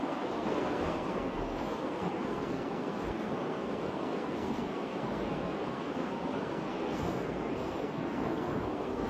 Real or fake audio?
fake